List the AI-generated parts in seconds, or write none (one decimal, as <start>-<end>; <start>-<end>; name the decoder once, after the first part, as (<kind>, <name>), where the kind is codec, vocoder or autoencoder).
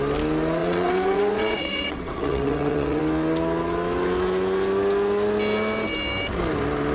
0.6-3.0 (vocoder, WaveNeXt)